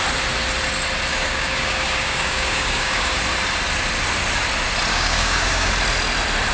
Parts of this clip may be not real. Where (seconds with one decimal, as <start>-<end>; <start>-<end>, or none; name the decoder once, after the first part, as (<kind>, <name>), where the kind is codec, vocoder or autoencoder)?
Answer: 1.1-3.2 (codec, DAC); 4.9-5.7

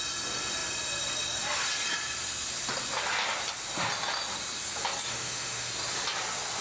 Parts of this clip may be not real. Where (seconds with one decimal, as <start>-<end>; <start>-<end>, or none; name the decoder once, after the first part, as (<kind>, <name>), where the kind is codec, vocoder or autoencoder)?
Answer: 5.1-5.7 (autoencoder, DAC-VAE)

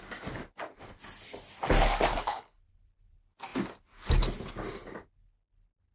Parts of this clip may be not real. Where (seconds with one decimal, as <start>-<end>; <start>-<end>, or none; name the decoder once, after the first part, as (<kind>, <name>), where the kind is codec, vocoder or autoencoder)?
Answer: 2.1-2.6 (codec, HILCodec)